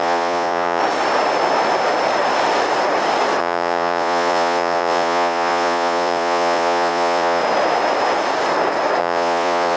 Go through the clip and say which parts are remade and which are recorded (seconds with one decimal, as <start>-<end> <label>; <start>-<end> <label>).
0.0-0.8 remade; 0.8-3.4 recorded; 3.4-7.4 remade; 7.4-9.0 recorded; 9.0-9.8 remade